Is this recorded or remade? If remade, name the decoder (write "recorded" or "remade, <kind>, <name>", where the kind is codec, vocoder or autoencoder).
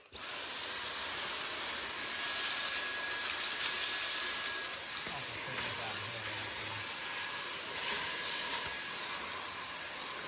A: recorded